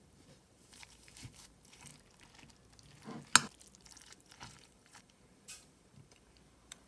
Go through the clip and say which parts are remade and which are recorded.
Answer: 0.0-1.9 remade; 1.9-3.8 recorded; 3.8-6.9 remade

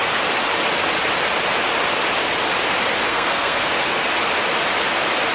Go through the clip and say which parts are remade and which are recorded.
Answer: 0.0-3.1 recorded; 3.1-3.7 remade; 3.7-5.3 recorded

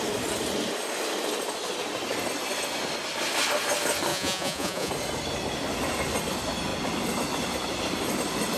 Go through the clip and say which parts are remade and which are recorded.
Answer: 0.0-4.1 recorded; 4.1-4.9 remade; 4.9-8.6 recorded

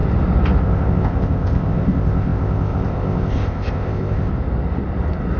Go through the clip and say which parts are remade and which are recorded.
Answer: 0.0-0.6 recorded; 0.6-4.3 remade; 4.3-5.4 recorded

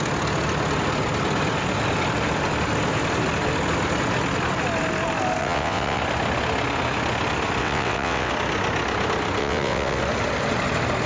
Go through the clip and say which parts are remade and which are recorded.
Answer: 0.0-5.4 recorded; 5.4-6.0 remade; 6.0-7.6 recorded; 7.6-8.3 remade; 8.3-9.4 recorded; 9.4-10.0 remade; 10.0-11.1 recorded

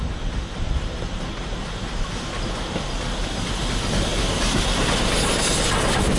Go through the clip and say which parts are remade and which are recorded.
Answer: 0.0-6.2 recorded

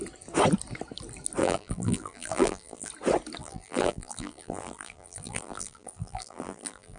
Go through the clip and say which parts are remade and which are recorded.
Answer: 0.0-1.4 recorded; 1.4-2.9 remade; 2.9-3.4 recorded; 3.4-7.0 remade

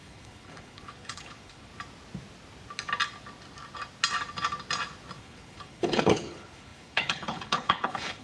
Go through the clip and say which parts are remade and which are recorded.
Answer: 0.0-1.7 remade; 1.7-5.2 recorded; 5.2-8.2 remade